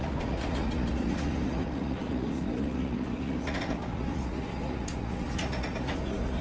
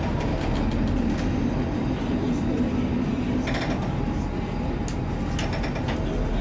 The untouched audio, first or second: second